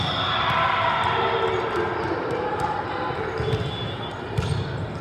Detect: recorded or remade recorded